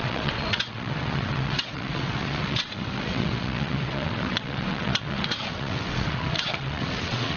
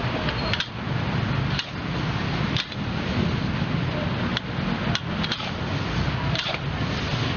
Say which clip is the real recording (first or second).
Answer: second